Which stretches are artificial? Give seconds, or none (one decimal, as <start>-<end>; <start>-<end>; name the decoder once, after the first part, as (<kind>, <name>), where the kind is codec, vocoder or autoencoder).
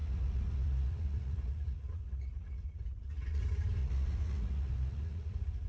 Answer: 0.0-3.4 (vocoder, Vocos); 3.8-5.3